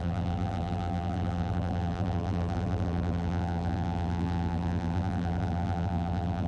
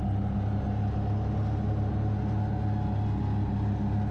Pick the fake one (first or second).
first